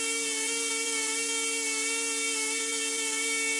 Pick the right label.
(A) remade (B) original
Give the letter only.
B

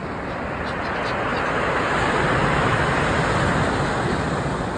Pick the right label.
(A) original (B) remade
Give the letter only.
A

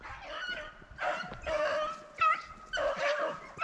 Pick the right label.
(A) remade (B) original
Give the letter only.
B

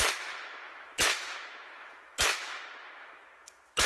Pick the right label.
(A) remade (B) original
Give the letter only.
A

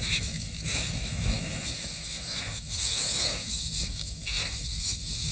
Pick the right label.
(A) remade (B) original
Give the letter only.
A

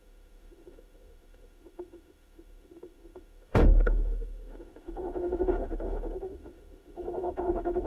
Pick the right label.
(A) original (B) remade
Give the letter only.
B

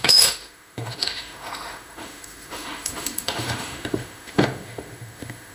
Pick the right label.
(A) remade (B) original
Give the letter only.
A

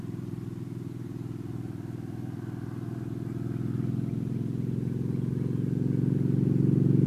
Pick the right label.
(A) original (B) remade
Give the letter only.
A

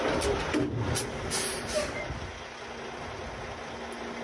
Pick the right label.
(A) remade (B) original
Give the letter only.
B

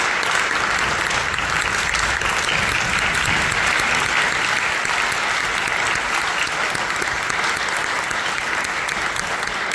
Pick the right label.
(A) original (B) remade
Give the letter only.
A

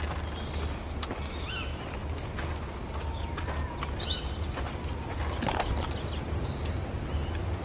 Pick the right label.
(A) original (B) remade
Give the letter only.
A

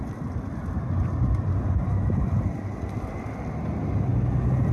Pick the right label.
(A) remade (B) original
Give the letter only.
B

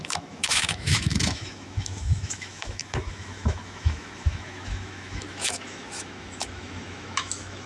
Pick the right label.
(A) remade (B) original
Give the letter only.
A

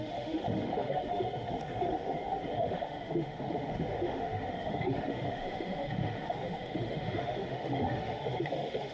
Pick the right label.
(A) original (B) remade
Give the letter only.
B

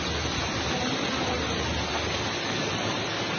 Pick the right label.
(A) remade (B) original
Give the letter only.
B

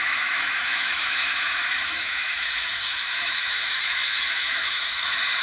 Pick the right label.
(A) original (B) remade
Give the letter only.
B